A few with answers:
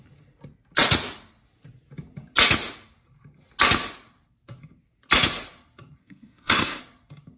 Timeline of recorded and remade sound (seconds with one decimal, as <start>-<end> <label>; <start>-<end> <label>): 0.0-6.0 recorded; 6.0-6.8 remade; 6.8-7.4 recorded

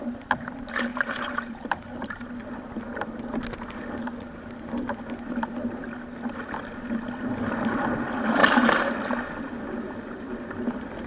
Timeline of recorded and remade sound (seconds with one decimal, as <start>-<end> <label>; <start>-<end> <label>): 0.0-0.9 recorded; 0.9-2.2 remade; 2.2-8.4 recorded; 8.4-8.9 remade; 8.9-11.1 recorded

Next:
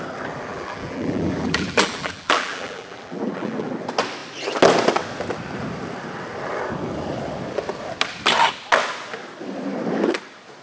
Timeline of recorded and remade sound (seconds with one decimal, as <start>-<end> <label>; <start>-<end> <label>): 0.0-0.5 recorded; 0.5-3.7 remade; 3.7-10.6 recorded

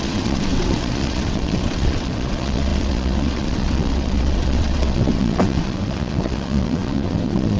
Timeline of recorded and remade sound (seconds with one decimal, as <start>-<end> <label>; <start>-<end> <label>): 0.0-7.6 remade

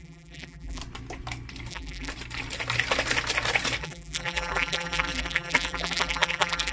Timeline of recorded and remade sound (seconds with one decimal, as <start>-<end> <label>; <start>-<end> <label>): 0.0-0.8 remade; 0.8-1.7 recorded; 1.7-2.1 remade; 2.1-3.8 recorded; 3.8-6.7 remade

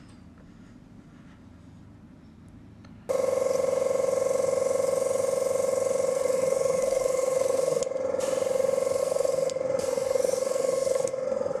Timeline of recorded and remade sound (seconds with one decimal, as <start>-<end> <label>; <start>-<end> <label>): 0.0-6.1 recorded; 6.1-7.8 remade; 7.8-9.0 recorded; 9.0-11.6 remade

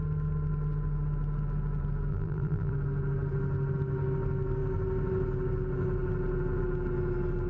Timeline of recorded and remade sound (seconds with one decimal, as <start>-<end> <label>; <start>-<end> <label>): 0.0-2.1 recorded; 2.1-2.7 remade; 2.7-7.5 recorded